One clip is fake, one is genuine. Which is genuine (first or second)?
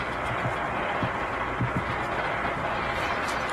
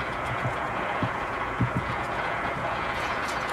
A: first